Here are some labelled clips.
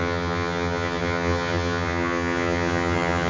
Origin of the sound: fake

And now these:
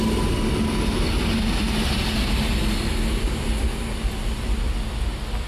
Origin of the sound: real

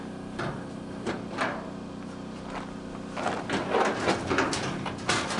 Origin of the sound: real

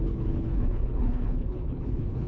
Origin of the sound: fake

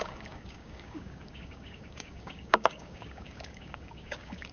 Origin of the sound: fake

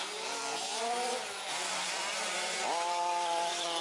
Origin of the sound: fake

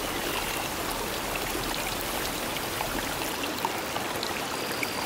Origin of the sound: real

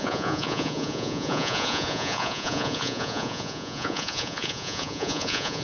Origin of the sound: fake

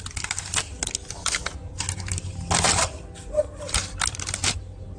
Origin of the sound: real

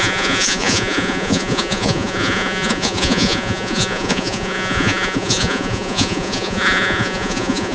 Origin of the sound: fake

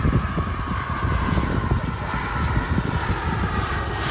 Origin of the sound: real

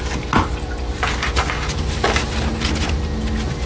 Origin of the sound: real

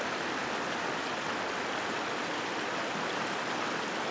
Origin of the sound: real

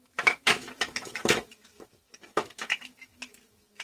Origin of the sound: fake